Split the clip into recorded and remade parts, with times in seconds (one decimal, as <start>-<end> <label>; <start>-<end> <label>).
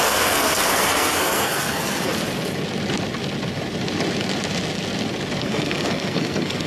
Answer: 0.0-2.1 remade; 2.1-5.4 recorded; 5.4-6.7 remade